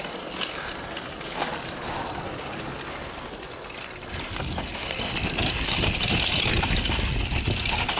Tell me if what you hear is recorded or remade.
recorded